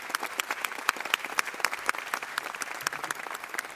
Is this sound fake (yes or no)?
no